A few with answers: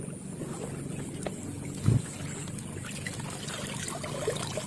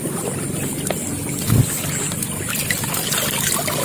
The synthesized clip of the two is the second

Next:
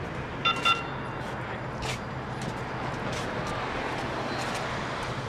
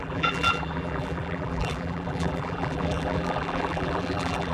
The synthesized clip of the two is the second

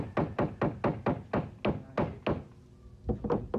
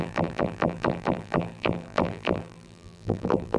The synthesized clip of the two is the second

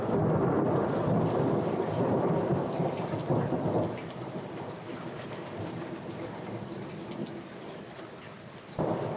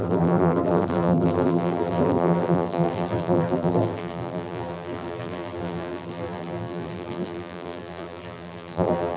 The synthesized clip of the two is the second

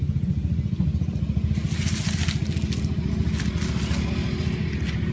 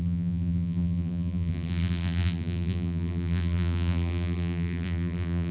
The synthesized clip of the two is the second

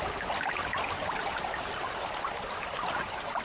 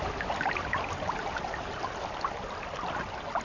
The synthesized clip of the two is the second